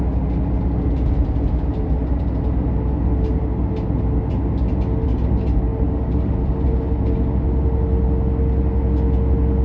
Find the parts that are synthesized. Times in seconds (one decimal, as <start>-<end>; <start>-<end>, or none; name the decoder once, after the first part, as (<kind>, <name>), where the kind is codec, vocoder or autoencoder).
none